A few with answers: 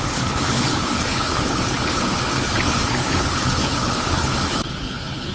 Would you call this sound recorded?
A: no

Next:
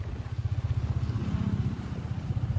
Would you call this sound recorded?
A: yes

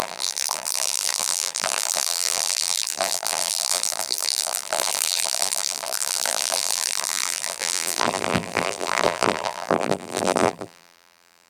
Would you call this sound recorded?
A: no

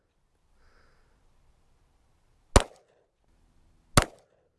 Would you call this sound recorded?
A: yes